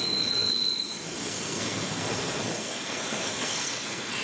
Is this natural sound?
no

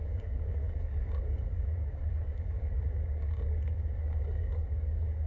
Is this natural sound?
no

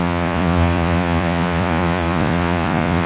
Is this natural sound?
no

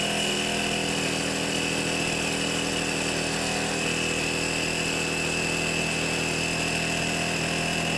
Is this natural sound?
yes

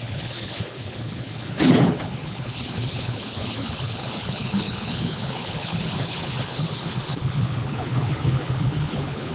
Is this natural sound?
no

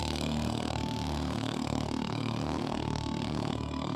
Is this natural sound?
no